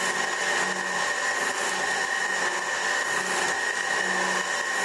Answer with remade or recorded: recorded